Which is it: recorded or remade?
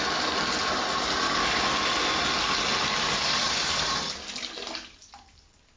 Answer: recorded